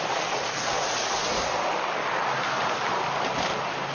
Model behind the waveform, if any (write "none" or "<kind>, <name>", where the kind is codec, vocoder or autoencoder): none